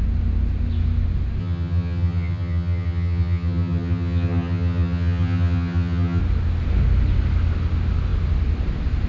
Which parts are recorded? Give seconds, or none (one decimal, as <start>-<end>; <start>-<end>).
0.0-1.4; 6.2-9.1